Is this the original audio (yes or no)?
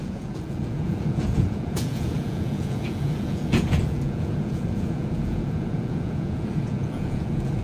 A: no